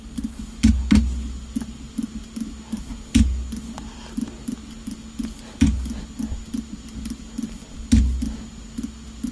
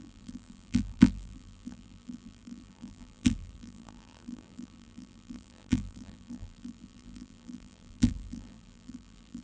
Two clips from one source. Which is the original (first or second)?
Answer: first